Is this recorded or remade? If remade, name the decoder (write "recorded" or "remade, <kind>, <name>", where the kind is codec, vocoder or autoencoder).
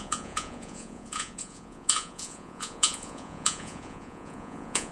remade, vocoder, Vocos